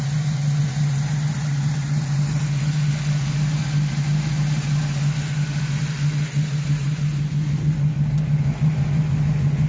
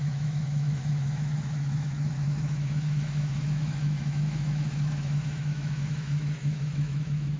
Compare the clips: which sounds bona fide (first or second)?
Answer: first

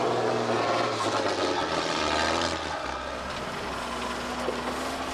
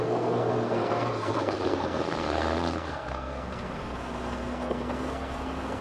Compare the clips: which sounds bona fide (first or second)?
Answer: first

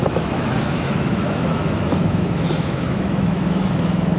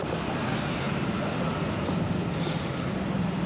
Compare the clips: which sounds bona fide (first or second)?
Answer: second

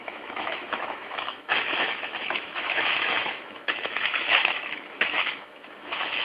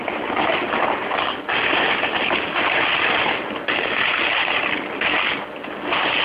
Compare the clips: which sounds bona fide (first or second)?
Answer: second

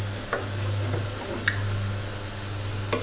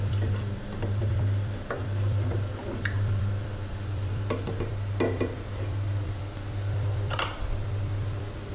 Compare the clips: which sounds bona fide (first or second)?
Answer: first